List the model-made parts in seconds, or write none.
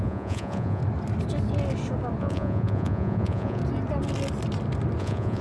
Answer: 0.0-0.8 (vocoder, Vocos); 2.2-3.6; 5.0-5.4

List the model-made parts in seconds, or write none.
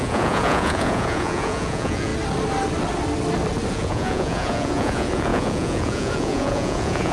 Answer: 0.0-2.1 (vocoder, Vocos); 3.7-7.1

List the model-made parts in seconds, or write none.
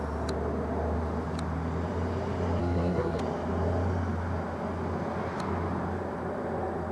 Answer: 2.6-3.2 (codec, SNAC)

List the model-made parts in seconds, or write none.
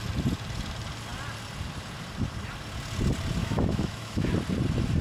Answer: 3.4-4.3 (autoencoder, DAC-VAE)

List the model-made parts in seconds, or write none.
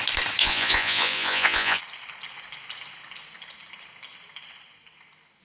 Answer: 0.4-1.8 (vocoder, Vocos)